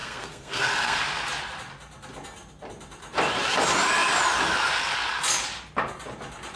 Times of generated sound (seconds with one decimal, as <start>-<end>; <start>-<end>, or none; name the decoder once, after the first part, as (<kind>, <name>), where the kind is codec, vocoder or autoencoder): 0.0-1.0 (codec, SNAC)